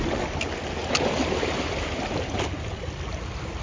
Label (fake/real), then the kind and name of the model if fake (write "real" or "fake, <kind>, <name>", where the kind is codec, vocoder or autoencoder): real